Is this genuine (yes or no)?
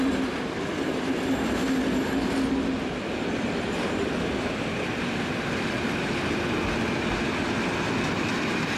yes